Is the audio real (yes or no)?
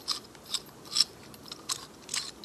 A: yes